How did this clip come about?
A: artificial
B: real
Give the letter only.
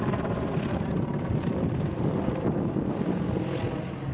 B